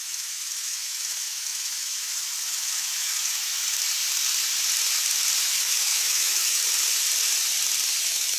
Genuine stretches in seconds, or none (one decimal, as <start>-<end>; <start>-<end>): 3.5-5.4; 6.6-8.0